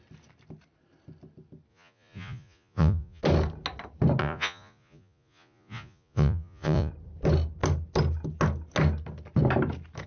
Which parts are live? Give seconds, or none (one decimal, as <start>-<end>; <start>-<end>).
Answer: 0.0-1.7; 3.2-4.2; 6.9-10.1